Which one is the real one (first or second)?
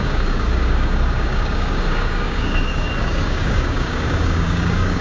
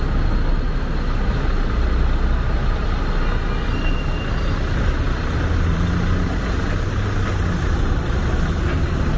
second